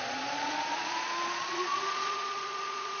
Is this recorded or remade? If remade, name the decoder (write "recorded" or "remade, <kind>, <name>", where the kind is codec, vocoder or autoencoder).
remade, vocoder, Vocos